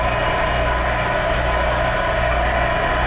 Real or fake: real